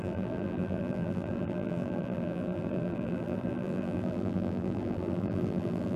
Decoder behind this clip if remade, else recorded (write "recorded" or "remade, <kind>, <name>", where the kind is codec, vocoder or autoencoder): remade, vocoder, BigVGAN v2